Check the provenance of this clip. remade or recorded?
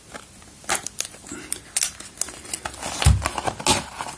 recorded